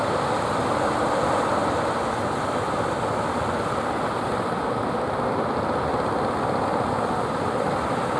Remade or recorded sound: recorded